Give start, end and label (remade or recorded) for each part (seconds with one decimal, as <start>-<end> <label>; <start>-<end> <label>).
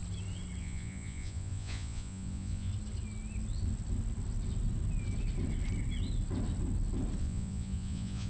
0.0-0.6 recorded; 0.6-2.7 remade; 2.7-7.2 recorded; 7.2-8.3 remade